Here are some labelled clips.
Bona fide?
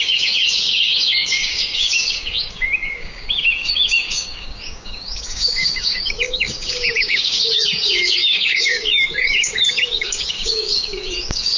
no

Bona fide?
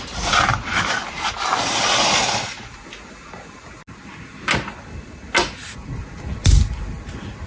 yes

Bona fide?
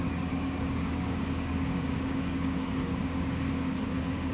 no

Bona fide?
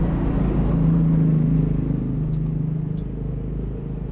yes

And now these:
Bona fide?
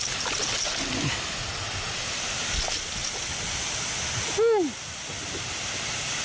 yes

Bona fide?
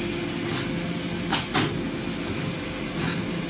yes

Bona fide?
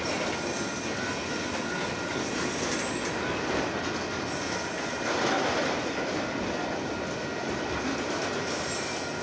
yes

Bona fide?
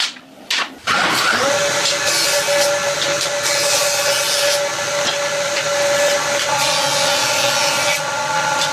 yes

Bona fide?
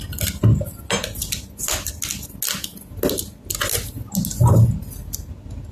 yes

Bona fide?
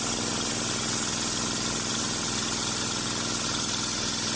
yes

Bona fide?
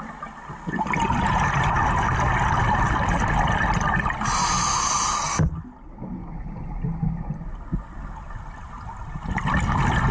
yes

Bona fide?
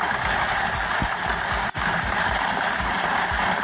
yes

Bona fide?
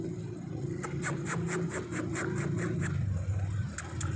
yes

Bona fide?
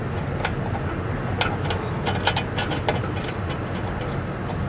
yes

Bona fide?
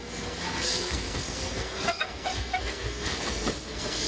no